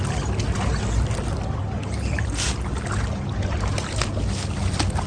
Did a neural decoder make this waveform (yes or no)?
no